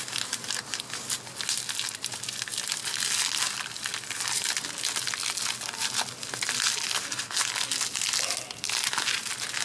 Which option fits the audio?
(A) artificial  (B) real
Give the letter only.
B